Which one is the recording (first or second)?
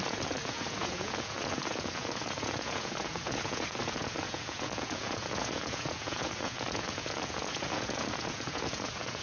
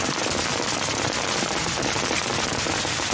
second